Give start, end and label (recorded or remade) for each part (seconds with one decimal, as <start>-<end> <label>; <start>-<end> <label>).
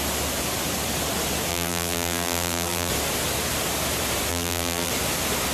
0.0-1.5 recorded; 1.5-2.9 remade; 2.9-4.3 recorded; 4.3-4.9 remade; 4.9-5.5 recorded